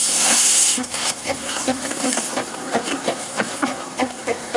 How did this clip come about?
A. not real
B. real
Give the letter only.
A